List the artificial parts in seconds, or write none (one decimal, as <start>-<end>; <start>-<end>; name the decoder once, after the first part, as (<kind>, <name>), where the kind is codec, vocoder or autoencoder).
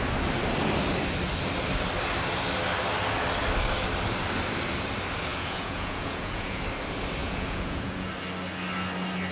5.3-6.6 (vocoder, Vocos); 7.2-8.1